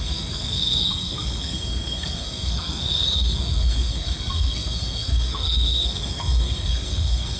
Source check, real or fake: fake